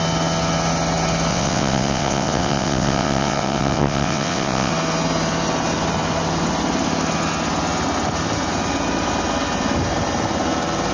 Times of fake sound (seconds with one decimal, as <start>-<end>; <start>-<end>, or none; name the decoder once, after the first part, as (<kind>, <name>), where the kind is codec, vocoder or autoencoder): 1.3-4.7 (vocoder, WaveNeXt)